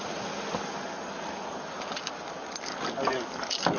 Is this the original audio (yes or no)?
yes